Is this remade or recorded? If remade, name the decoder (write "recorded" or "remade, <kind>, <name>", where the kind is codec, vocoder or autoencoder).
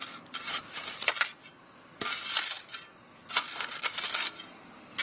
recorded